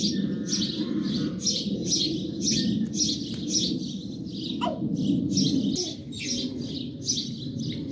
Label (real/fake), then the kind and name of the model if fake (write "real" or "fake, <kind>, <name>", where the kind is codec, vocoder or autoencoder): real